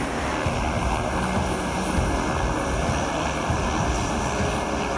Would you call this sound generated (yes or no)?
no